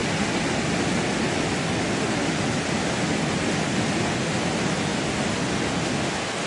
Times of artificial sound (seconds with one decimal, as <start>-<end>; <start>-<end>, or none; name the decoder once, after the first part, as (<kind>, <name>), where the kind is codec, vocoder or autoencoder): none

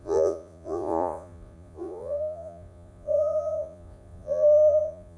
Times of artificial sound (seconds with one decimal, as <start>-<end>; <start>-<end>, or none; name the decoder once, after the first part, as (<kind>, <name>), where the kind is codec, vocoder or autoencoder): 0.0-5.2 (vocoder, Vocos)

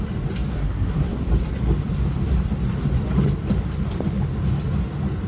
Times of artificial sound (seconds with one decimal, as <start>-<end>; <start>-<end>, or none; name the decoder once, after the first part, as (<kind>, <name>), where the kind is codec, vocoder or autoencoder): 0.5-1.3 (codec, SNAC)

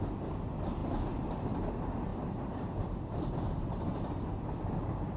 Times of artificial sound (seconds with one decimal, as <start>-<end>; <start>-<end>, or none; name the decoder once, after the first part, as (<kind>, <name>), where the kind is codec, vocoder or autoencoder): none

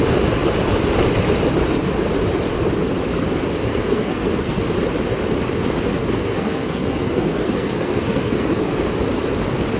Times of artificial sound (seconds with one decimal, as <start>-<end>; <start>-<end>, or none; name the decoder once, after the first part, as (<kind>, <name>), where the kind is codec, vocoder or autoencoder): 3.5-4.6 (codec, SNAC); 6.0-8.8